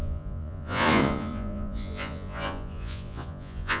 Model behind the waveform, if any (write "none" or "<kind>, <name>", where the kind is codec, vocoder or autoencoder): vocoder, Vocos